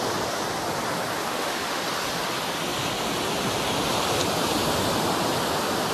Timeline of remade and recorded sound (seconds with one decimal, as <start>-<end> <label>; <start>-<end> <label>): 0.0-1.2 recorded; 1.2-1.8 remade; 1.8-5.9 recorded